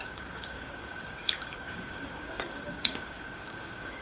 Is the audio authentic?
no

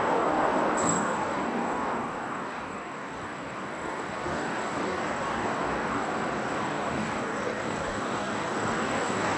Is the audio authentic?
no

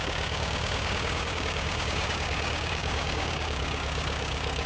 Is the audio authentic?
no